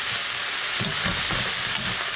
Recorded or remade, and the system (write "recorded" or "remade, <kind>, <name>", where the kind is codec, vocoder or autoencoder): recorded